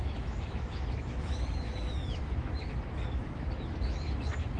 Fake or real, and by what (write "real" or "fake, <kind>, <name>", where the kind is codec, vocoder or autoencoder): fake, autoencoder, DAC-VAE